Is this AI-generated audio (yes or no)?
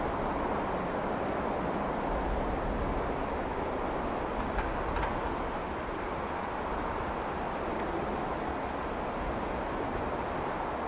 no